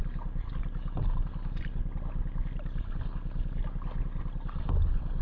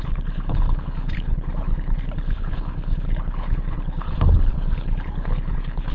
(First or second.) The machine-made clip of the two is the second